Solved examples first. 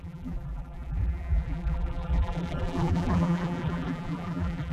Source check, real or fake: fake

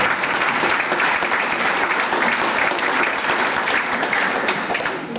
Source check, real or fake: fake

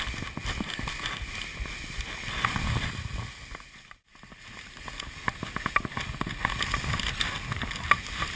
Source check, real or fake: real